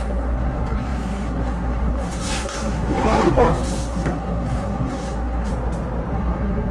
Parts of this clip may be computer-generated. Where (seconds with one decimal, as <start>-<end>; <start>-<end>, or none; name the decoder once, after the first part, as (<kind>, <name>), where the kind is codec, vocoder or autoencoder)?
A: 0.0-5.5 (codec, SNAC); 6.1-6.7